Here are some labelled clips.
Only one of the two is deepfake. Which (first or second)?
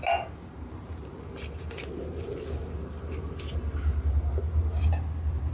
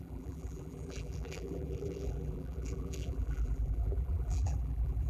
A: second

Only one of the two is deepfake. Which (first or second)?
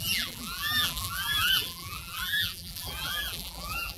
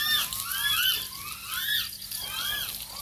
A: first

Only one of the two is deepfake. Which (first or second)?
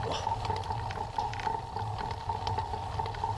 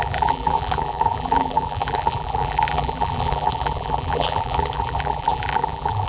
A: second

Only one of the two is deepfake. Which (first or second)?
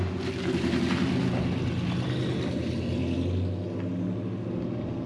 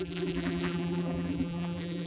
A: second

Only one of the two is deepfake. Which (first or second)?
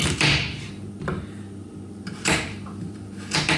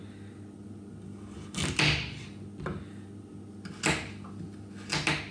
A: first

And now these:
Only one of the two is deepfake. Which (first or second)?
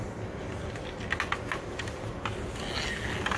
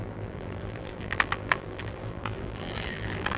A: second